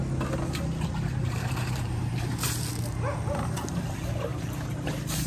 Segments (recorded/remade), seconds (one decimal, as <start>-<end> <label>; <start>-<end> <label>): 0.0-1.2 recorded; 1.2-2.3 remade; 2.3-4.3 recorded; 4.3-5.3 remade